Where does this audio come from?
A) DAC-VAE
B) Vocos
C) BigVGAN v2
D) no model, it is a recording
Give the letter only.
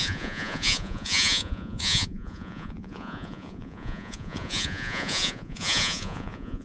B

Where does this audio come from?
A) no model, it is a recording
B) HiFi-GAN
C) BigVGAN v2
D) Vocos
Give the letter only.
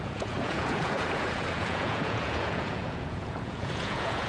D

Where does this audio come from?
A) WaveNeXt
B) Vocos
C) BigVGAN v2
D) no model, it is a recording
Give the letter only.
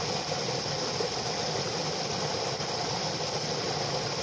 D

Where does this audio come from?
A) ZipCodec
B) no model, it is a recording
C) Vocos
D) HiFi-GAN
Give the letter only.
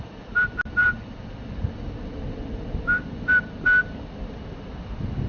B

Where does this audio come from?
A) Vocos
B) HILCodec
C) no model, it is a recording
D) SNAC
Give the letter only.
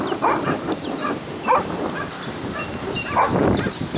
C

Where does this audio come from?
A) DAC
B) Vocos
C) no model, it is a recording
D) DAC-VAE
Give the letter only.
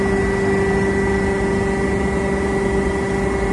C